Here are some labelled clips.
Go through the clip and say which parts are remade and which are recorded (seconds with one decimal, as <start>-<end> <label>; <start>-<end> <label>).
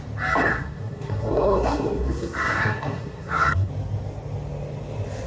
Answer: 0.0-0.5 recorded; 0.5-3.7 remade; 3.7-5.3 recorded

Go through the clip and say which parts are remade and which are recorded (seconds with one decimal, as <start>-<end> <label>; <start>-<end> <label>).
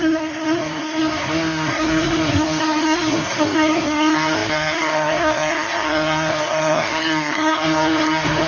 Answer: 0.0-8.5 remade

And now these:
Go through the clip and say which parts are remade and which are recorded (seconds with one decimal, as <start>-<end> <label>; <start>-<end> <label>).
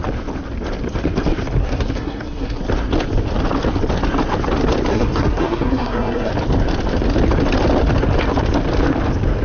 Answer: 0.0-1.6 recorded; 1.6-2.6 remade; 2.6-4.9 recorded; 4.9-6.3 remade; 6.3-9.4 recorded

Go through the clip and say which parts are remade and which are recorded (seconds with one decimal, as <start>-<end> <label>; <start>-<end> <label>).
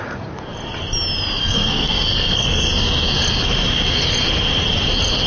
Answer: 0.0-1.4 recorded; 1.4-2.7 remade; 2.7-5.3 recorded